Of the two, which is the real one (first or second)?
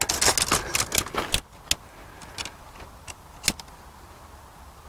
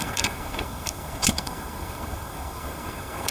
first